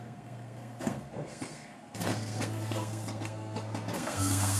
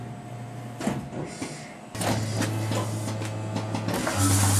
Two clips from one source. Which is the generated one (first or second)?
first